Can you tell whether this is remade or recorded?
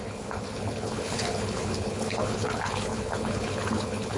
remade